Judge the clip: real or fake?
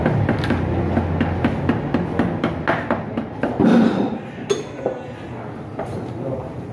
real